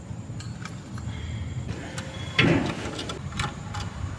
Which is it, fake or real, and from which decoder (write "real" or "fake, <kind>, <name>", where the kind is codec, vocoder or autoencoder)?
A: real